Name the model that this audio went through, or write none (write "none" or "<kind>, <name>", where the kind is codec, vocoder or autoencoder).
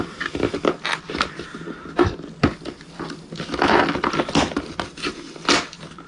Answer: none